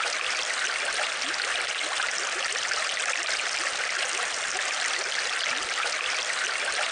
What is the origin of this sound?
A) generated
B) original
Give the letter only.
B